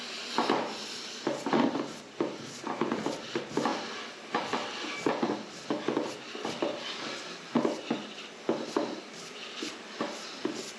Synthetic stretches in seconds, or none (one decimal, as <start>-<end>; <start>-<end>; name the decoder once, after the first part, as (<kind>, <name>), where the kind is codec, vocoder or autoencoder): none